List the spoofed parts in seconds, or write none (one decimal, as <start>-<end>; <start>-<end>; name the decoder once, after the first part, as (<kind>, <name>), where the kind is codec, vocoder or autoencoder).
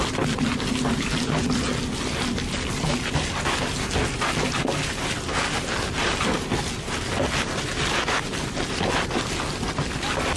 none